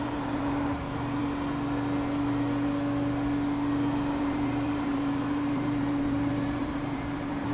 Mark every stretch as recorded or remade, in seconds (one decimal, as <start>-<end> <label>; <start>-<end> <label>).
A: 0.0-1.2 remade; 1.2-4.2 recorded; 4.2-7.5 remade